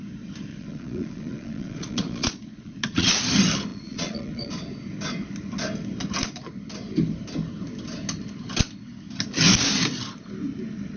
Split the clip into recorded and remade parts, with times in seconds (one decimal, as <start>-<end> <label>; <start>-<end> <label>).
0.0-0.5 recorded; 0.5-3.1 remade; 3.1-3.7 recorded; 3.7-4.5 remade; 4.5-11.0 recorded

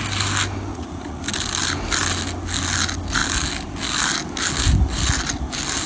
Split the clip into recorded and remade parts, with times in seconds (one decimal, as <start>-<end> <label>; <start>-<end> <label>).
0.0-0.7 recorded; 0.7-1.2 remade; 1.2-5.9 recorded

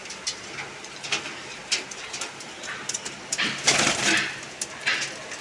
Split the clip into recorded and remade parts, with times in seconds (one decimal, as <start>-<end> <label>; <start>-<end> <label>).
0.0-5.4 recorded